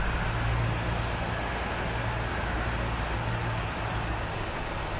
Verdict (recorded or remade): recorded